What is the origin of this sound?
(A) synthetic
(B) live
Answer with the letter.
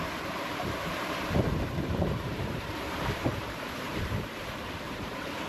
A